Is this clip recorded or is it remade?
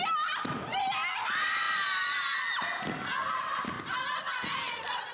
recorded